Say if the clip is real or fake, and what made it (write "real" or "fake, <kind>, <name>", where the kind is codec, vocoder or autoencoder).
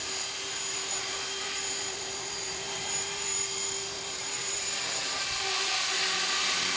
fake, vocoder, BigVGAN v2